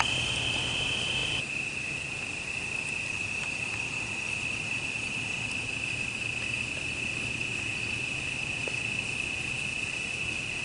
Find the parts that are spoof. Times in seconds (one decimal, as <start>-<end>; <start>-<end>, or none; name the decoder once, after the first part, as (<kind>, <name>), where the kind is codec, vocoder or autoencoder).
none